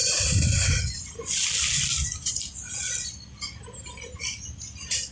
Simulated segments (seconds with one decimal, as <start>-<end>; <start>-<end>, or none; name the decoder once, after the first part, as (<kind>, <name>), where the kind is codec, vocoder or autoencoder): none